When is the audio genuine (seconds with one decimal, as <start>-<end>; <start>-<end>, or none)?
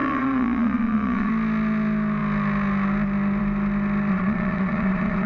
1.3-4.1